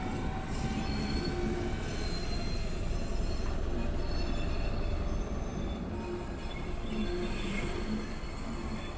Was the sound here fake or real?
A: real